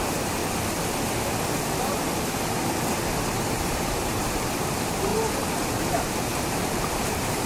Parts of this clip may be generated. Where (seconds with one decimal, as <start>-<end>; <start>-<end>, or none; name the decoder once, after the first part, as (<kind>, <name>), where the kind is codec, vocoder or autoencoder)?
0.0-0.4 (vocoder, BigVGAN v2); 3.5-7.5